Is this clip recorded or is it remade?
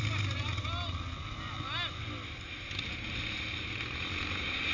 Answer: recorded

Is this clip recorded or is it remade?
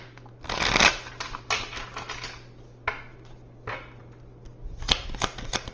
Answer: recorded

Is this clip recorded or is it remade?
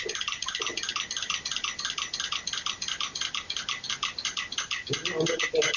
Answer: recorded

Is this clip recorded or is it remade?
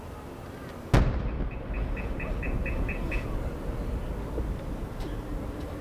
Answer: recorded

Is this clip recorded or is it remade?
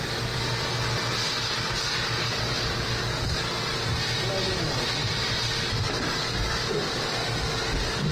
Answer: recorded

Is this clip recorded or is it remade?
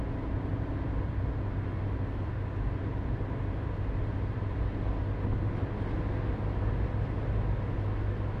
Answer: recorded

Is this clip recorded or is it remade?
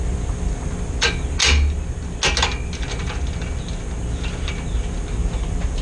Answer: recorded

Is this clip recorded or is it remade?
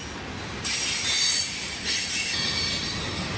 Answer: recorded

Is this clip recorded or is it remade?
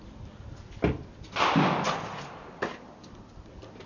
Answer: recorded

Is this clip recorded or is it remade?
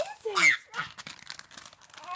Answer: recorded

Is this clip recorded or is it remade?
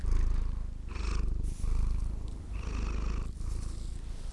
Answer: recorded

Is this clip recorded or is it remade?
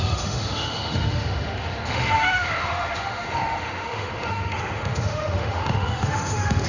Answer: remade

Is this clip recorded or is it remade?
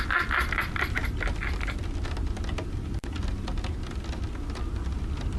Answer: remade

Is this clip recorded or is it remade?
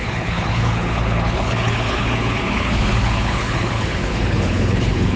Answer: remade